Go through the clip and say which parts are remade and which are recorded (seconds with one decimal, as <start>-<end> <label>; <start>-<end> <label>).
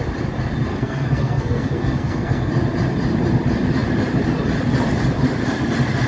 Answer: 0.0-0.7 recorded; 0.7-2.5 remade; 2.5-6.1 recorded